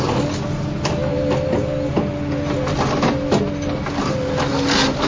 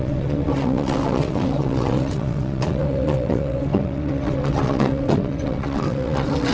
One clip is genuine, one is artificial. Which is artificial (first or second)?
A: second